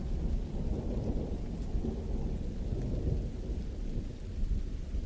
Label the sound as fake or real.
real